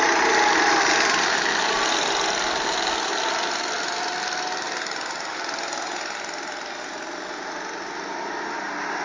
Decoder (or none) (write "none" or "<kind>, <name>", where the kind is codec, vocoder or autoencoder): none